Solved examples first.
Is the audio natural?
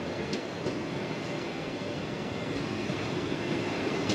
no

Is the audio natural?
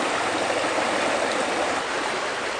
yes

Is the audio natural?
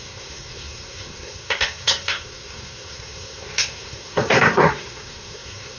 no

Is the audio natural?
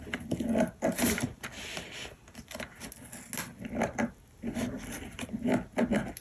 yes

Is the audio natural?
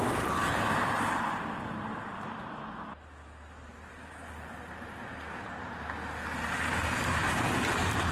yes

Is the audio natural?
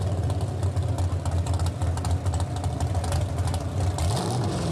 yes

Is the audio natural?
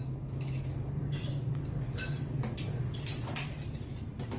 yes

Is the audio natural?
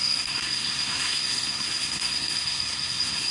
no